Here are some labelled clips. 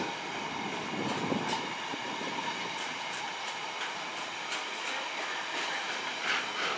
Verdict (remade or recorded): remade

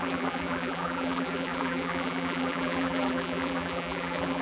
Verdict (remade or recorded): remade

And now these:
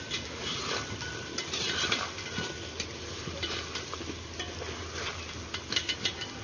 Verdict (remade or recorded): recorded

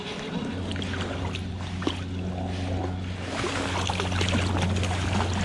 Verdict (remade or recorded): recorded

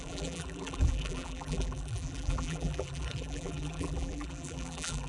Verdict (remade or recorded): remade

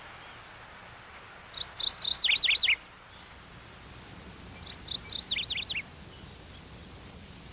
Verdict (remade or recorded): recorded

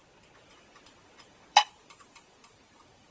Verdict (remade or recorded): remade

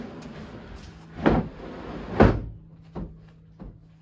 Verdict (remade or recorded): recorded